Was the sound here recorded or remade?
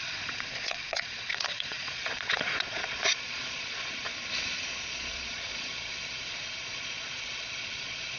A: remade